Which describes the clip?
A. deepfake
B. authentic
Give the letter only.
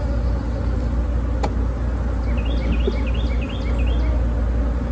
B